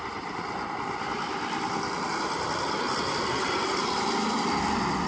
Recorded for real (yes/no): no